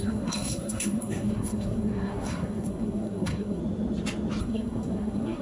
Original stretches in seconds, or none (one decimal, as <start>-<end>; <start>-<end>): 3.6-4.4